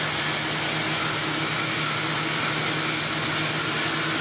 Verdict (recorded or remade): recorded